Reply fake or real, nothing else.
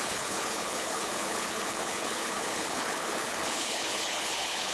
fake